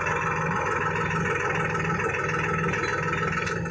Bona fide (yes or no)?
yes